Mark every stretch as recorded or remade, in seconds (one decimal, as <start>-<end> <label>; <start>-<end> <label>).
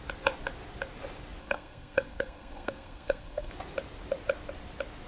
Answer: 0.0-1.4 recorded; 1.4-3.5 remade; 3.5-5.1 recorded